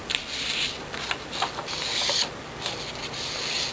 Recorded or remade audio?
recorded